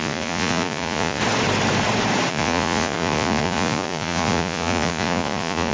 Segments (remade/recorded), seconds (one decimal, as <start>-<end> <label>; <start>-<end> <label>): 0.0-1.2 remade; 1.2-2.3 recorded; 2.3-5.7 remade